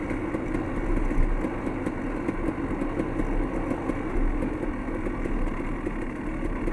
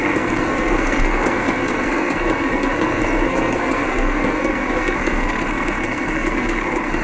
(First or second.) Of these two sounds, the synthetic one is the second